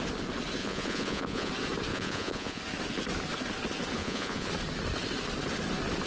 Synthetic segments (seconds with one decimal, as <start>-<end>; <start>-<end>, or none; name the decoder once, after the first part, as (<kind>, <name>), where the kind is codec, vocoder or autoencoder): 0.6-1.5 (vocoder, Vocos); 1.9-2.6; 4.0-4.5